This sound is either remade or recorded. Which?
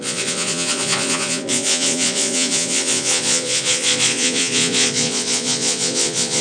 remade